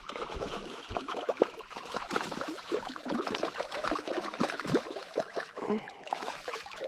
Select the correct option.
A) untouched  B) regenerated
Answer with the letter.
B